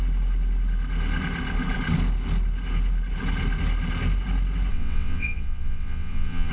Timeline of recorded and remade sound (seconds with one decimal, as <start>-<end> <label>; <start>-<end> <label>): 0.0-4.7 recorded; 4.7-6.5 remade

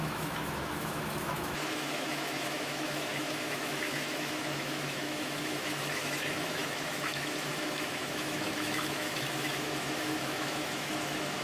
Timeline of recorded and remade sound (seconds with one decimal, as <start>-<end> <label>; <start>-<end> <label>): 0.0-11.4 remade

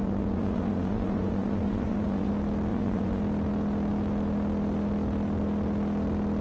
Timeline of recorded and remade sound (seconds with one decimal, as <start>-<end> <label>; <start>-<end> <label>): 0.0-2.3 remade; 2.3-2.7 recorded; 2.7-3.2 remade; 3.2-6.4 recorded

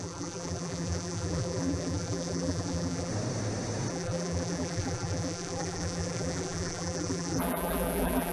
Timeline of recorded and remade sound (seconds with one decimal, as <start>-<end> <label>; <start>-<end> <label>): 0.0-3.1 remade; 3.1-3.9 recorded; 3.9-8.3 remade

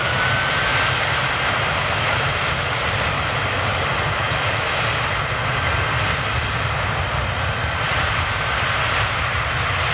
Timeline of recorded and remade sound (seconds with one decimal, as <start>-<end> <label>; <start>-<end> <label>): 0.0-9.9 recorded

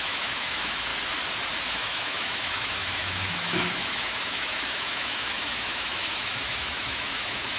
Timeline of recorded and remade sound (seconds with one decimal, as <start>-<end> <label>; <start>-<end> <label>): 0.0-0.9 remade; 0.9-1.7 recorded; 1.7-7.6 remade

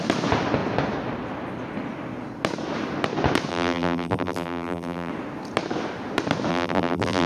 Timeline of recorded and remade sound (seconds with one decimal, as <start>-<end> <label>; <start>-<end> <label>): 0.0-3.5 recorded; 3.5-5.1 remade; 5.1-6.5 recorded; 6.5-7.3 remade

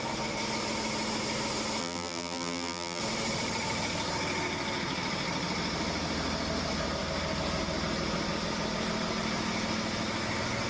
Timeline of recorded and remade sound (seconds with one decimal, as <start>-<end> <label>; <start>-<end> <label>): 0.0-1.8 recorded; 1.8-3.0 remade; 3.0-10.7 recorded